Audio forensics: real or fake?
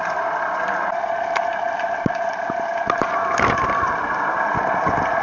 real